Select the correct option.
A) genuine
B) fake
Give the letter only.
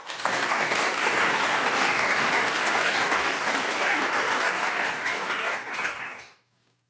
B